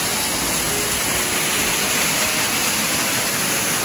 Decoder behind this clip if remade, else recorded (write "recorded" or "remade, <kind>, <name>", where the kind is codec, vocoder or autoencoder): recorded